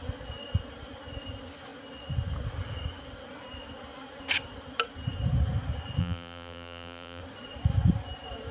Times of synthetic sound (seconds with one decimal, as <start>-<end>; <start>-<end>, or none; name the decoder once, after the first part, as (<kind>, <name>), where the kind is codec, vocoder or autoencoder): 6.0-7.2 (vocoder, BigVGAN v2)